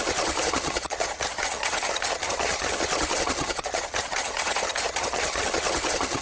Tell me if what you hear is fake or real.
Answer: fake